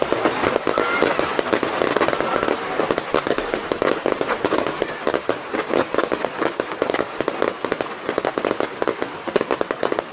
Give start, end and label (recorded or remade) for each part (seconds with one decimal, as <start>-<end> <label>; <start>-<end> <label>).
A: 0.0-2.3 recorded; 2.3-7.0 remade; 7.0-10.1 recorded